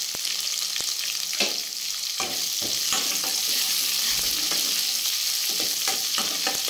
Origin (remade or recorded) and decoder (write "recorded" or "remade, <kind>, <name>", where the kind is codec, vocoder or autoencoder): recorded